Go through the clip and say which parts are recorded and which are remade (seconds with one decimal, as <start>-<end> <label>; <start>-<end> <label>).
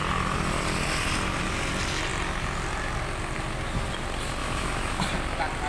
0.0-4.4 recorded; 4.4-5.0 remade; 5.0-5.7 recorded